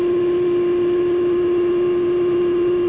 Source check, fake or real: real